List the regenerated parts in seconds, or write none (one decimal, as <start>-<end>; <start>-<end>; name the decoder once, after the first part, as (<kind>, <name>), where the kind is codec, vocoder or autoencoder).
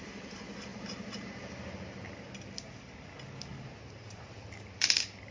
0.7-1.3 (vocoder, BigVGAN v2); 3.5-5.3